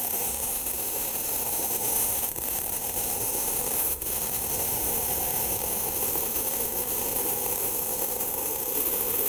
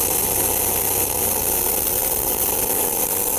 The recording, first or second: second